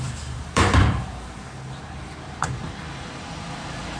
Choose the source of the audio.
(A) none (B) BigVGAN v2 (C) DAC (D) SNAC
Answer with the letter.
B